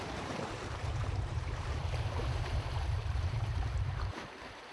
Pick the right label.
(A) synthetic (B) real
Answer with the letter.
A